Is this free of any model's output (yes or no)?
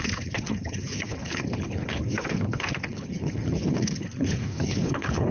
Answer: no